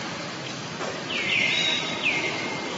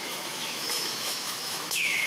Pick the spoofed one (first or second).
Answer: second